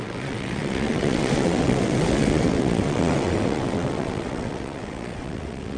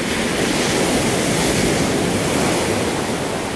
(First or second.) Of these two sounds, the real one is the second